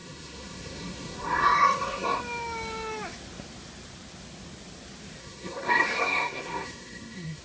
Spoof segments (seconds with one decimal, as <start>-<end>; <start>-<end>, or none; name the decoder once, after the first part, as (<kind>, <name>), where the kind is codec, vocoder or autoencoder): 0.0-2.2 (codec, SNAC); 5.2-7.4